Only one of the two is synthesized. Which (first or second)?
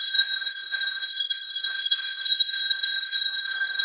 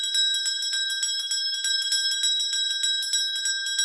first